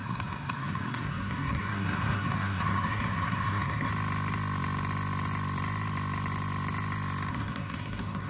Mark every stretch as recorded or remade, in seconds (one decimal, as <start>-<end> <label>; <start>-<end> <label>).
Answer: 0.0-3.9 remade; 3.9-7.3 recorded; 7.3-8.3 remade